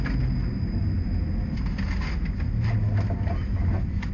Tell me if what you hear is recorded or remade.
recorded